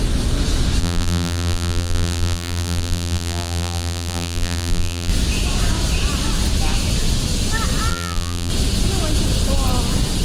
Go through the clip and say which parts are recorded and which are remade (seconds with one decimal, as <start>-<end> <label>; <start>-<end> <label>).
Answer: 0.0-0.8 recorded; 0.8-5.1 remade; 5.1-7.9 recorded; 7.9-8.5 remade; 8.5-10.2 recorded

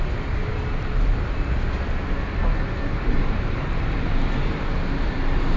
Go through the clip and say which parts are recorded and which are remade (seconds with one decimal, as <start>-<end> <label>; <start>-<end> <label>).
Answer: 0.0-5.6 recorded

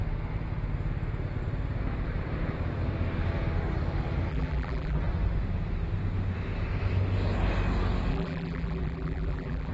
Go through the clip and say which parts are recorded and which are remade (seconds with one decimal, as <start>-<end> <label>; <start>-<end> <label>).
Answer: 0.0-4.3 recorded; 4.3-5.0 remade; 5.0-8.1 recorded; 8.1-9.7 remade

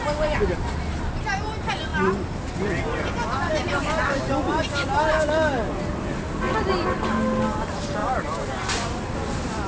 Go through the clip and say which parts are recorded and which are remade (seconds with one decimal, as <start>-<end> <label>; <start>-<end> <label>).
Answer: 0.0-8.0 recorded; 8.0-9.7 remade

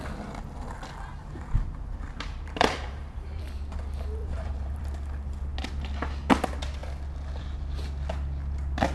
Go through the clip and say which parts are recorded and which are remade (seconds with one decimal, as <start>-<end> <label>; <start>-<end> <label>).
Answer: 0.0-1.1 recorded; 1.1-3.4 remade; 3.4-4.2 recorded; 4.2-4.8 remade; 4.8-8.9 recorded

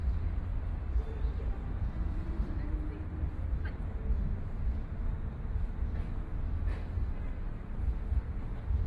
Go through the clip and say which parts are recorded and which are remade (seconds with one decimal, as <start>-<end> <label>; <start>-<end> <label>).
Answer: 0.0-0.5 recorded; 0.5-2.5 remade; 2.5-4.9 recorded; 4.9-5.5 remade; 5.5-8.9 recorded

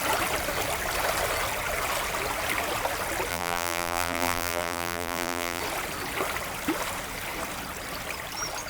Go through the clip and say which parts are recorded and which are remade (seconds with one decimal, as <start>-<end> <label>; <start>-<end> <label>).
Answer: 0.0-3.3 recorded; 3.3-5.6 remade; 5.6-8.7 recorded